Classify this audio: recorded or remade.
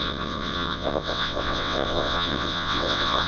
remade